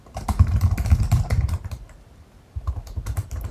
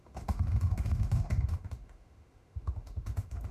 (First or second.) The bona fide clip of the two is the first